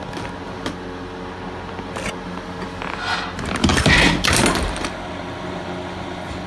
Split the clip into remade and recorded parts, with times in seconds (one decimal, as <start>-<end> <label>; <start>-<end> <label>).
0.0-6.5 recorded